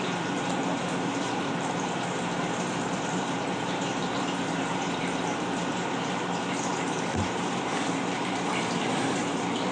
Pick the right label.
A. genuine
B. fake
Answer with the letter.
B